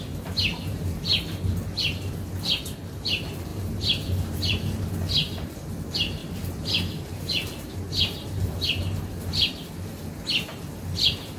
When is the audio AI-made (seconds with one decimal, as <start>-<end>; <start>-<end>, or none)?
0.5-1.0; 3.5-4.9; 6.2-9.1